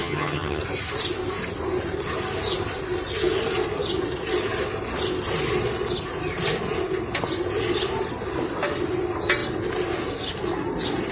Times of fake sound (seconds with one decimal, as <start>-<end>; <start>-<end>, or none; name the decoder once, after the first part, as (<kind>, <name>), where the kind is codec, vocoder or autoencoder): 0.0-0.6 (vocoder, HiFi-GAN)